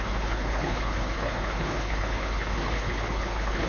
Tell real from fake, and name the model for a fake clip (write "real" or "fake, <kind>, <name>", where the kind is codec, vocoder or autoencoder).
fake, codec, HILCodec